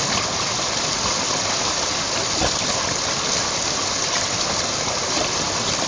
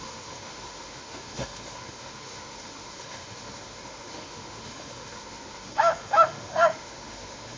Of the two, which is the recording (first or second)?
first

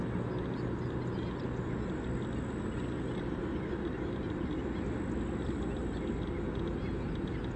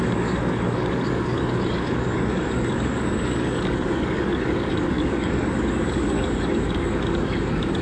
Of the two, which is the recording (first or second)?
first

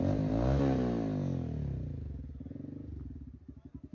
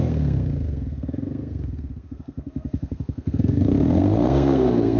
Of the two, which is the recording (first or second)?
first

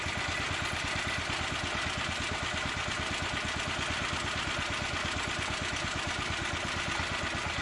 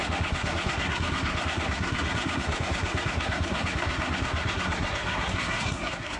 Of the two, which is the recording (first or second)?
first